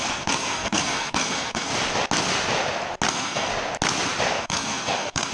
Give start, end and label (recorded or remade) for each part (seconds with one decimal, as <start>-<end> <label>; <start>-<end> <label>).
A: 0.0-1.7 remade; 1.7-3.1 recorded; 3.1-3.5 remade; 3.5-4.4 recorded; 4.4-5.3 remade